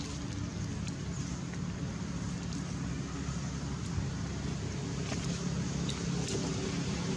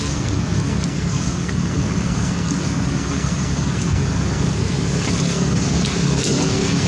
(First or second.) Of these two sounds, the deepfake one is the second